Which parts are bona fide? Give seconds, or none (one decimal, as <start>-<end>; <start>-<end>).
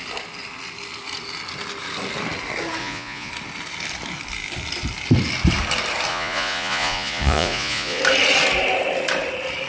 0.0-2.8; 3.3-6.1; 8.0-9.7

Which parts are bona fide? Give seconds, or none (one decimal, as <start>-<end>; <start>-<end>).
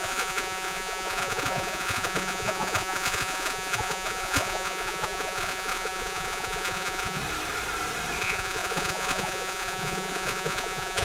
7.2-8.2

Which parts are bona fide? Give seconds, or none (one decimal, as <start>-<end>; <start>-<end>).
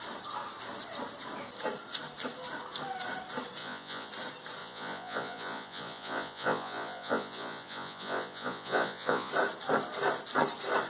0.0-3.6; 4.1-4.6; 9.3-10.9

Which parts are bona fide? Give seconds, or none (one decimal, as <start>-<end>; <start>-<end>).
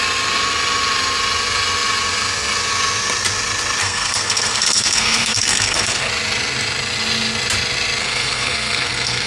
0.0-3.8; 6.1-8.0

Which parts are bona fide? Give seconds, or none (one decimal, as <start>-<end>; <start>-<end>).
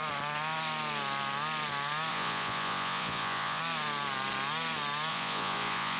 0.0-2.1; 3.6-5.1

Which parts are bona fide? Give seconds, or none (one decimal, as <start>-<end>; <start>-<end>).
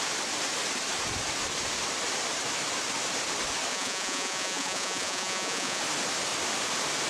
0.0-3.7; 5.8-7.1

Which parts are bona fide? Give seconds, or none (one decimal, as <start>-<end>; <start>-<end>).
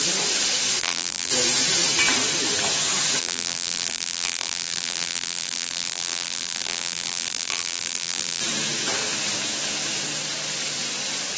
0.0-0.8; 1.3-3.2; 8.4-11.4